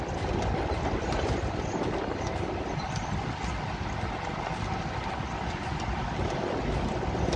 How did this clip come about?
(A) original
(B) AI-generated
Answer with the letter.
A